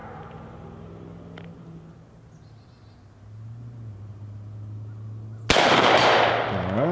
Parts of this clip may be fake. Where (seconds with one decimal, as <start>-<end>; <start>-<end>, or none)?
none